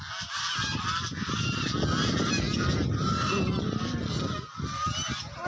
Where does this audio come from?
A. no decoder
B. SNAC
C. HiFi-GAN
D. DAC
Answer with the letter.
A